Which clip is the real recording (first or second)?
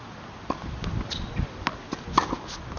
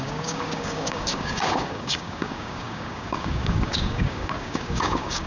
first